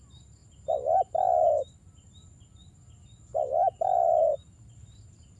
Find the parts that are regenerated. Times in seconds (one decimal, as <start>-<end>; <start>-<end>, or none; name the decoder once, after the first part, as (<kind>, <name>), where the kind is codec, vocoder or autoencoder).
none